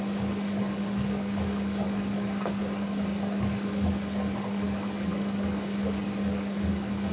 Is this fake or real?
fake